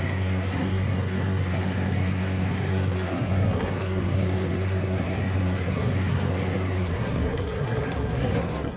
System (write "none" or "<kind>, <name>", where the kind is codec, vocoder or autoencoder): codec, SNAC